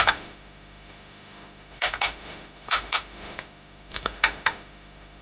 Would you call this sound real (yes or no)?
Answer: no